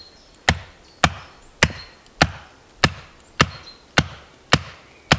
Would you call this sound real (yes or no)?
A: yes